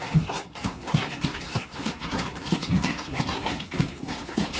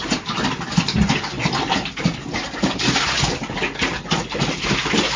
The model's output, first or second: first